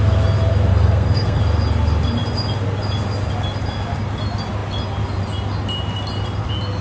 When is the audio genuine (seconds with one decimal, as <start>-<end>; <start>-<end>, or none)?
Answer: 0.0-0.7; 1.4-6.8